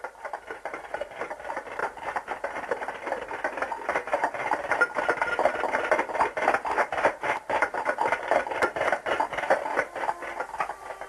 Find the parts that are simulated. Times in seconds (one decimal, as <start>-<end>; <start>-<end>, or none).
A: none